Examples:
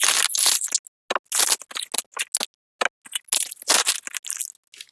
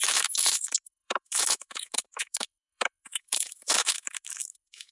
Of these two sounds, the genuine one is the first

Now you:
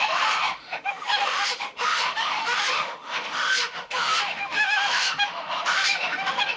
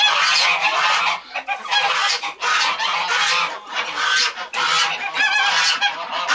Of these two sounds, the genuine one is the second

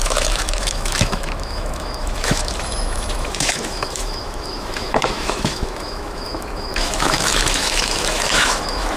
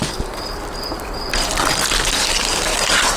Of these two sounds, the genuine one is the second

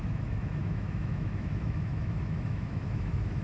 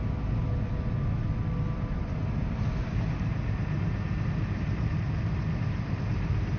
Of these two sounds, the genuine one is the second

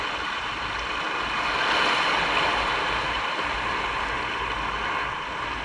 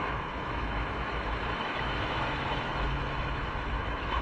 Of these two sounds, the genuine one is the first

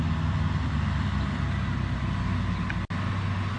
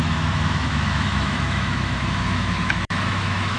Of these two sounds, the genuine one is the first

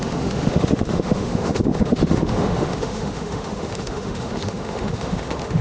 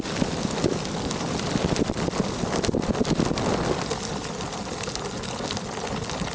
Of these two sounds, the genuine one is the second